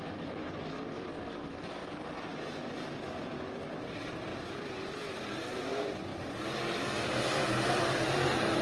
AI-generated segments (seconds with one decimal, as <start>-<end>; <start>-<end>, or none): 0.0-1.8; 3.8-6.1; 7.0-8.6